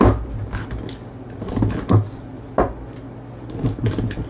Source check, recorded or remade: recorded